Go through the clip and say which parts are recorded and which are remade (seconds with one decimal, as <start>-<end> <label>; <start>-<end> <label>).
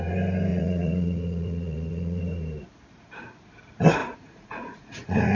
0.0-0.5 recorded; 0.5-2.2 remade; 2.2-4.0 recorded; 4.0-5.4 remade